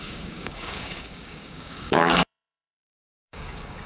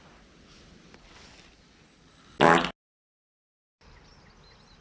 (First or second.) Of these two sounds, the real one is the second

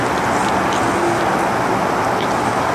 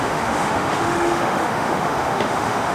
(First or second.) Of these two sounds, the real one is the first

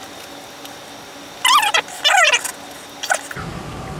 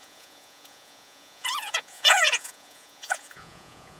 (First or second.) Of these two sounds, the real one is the first